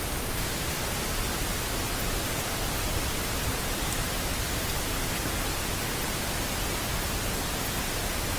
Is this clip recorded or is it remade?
recorded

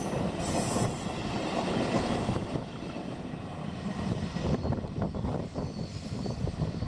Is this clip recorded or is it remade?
recorded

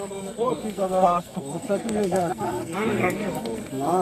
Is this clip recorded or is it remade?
remade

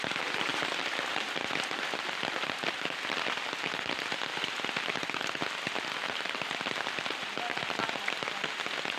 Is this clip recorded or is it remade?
recorded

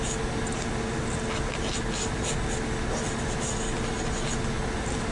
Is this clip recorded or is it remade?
recorded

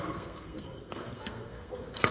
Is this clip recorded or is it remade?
remade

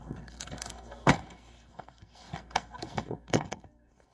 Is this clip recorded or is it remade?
remade